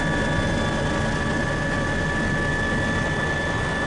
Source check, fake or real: real